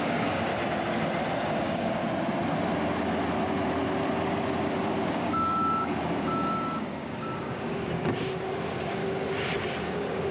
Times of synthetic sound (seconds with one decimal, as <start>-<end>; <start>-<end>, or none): 0.0-0.5; 1.6-2.0; 5.1-9.0; 9.8-10.3